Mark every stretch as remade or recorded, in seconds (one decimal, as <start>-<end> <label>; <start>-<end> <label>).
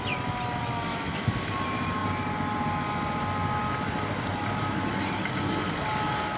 0.0-0.9 recorded; 0.9-1.5 remade; 1.5-6.4 recorded